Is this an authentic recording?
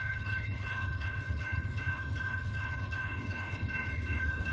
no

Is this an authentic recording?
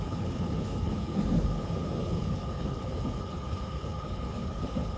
no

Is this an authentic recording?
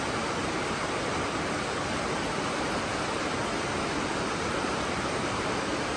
yes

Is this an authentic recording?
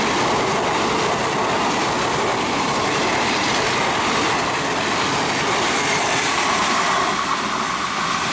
yes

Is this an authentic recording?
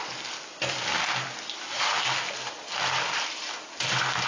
yes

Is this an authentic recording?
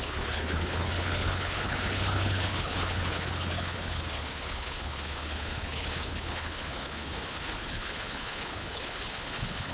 no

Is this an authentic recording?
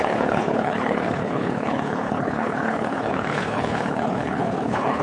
no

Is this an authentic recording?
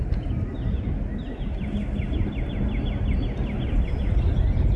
yes